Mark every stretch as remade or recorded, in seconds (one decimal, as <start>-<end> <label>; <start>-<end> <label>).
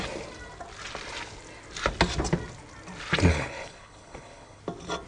0.0-3.3 recorded; 3.3-4.6 remade; 4.6-5.1 recorded